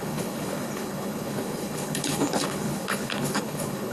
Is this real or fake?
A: fake